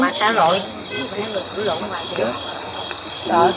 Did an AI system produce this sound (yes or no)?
no